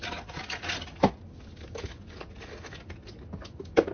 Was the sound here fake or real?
real